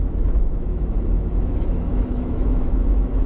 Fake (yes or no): yes